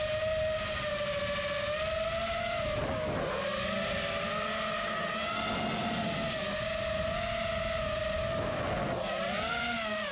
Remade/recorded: recorded